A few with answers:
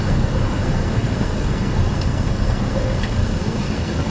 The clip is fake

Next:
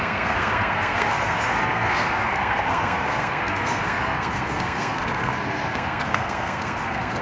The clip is fake